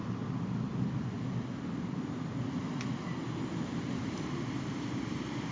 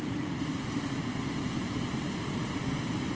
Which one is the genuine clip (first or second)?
first